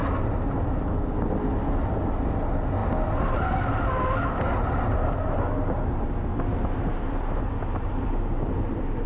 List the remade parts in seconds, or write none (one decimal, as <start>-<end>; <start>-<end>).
0.0-0.8